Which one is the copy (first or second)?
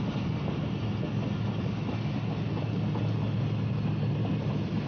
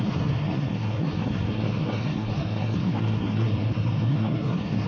second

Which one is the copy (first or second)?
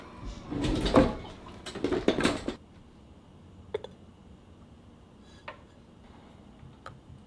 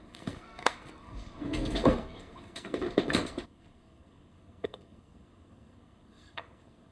second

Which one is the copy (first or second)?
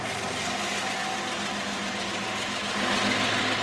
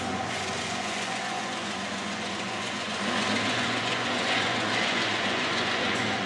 second